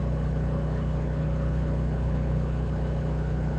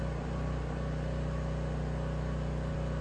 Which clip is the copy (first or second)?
first